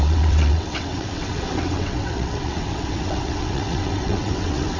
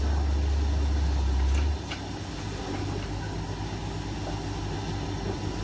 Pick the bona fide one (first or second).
second